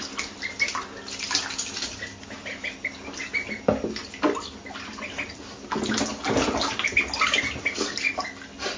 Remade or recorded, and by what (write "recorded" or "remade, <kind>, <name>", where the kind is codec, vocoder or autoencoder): recorded